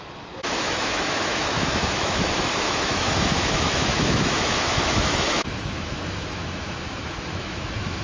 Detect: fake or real fake